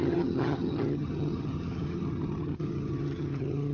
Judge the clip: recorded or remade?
remade